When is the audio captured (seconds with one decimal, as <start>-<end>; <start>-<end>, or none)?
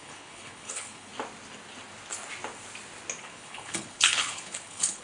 1.1-3.2